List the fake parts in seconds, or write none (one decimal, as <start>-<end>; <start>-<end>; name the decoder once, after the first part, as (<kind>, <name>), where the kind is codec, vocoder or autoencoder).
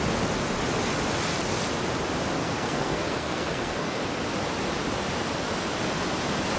2.4-4.0 (codec, SNAC)